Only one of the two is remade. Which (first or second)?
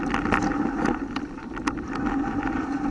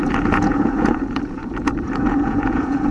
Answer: second